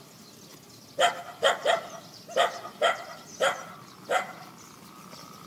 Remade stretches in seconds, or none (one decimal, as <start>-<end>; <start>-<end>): none